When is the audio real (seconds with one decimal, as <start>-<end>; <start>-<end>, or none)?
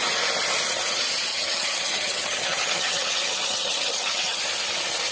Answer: 0.0-1.3; 4.4-5.1